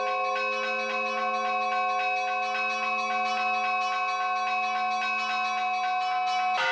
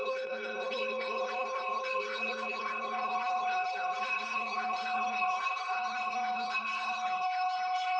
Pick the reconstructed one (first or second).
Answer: second